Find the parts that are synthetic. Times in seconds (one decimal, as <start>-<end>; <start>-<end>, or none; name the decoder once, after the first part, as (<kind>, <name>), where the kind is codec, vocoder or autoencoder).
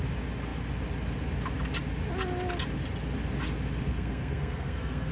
3.9-5.1 (codec, SNAC)